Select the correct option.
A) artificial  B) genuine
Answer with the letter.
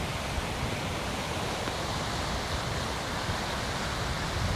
B